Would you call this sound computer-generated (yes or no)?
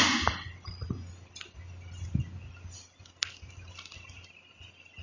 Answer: no